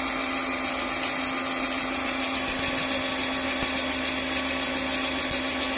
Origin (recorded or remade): recorded